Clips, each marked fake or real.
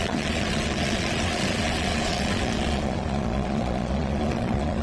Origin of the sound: fake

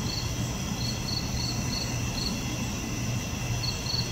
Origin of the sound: real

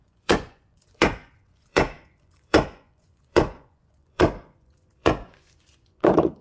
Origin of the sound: fake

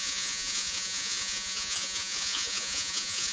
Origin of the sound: fake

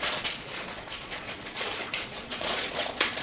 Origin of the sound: fake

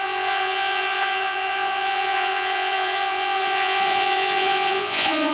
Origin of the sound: fake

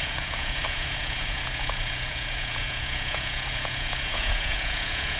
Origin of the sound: fake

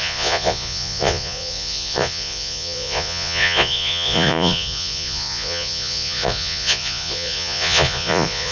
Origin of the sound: fake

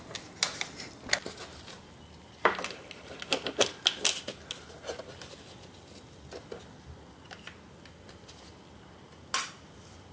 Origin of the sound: real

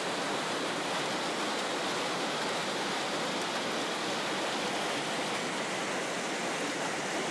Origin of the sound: real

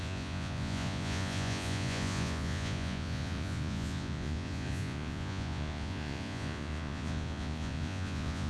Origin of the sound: fake